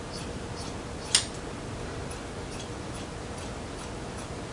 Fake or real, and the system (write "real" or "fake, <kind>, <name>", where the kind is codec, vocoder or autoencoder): real